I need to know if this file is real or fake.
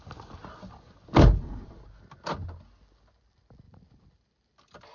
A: real